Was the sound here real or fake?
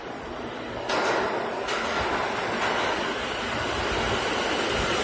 real